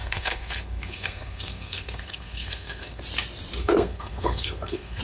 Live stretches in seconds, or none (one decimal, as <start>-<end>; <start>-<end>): 3.0-3.6